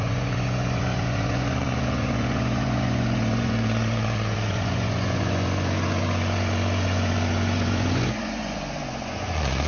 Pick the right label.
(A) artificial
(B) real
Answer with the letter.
A